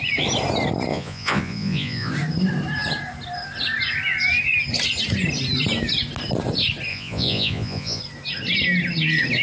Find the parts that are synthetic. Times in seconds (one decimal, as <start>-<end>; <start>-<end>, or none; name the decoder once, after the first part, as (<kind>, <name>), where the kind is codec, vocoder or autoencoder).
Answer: 0.9-2.1 (vocoder, Vocos); 6.9-8.0